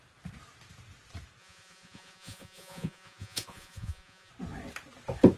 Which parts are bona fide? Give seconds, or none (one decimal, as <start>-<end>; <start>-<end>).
0.0-1.4; 4.3-5.4